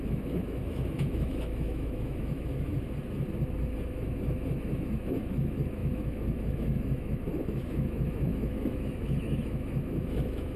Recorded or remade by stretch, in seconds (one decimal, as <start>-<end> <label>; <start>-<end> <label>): 0.0-2.7 remade; 2.7-3.8 recorded; 3.8-10.6 remade